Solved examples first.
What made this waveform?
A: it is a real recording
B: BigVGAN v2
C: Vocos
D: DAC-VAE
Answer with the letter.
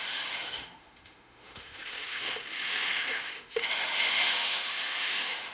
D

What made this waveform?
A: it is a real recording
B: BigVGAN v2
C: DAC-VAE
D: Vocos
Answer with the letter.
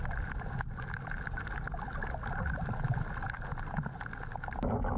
A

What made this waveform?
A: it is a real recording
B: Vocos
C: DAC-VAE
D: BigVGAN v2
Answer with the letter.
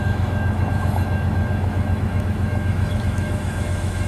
C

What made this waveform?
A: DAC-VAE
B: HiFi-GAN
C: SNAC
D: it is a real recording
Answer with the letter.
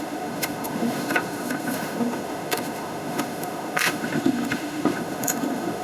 A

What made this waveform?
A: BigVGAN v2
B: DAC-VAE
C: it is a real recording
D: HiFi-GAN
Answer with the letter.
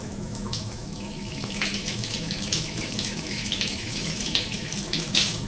B